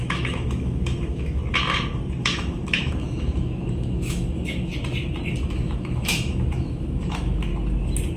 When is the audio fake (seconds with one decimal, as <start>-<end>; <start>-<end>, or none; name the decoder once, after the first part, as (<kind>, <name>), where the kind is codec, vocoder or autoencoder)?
0.0-1.4 (autoencoder, DAC-VAE); 2.2-4.7; 5.5-7.5